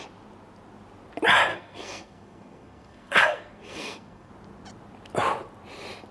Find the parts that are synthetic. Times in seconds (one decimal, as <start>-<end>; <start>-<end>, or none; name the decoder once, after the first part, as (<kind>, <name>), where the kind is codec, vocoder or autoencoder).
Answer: 1.5-4.3 (codec, SNAC)